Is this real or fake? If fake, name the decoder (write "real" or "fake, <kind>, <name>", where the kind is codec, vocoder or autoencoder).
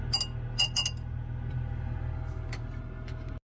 real